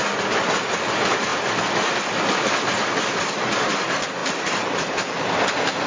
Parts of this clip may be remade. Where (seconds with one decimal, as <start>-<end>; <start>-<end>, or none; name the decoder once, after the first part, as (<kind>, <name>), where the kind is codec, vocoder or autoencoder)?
none